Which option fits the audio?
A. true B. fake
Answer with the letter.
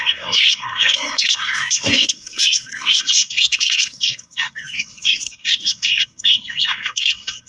B